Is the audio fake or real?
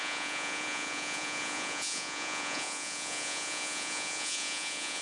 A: fake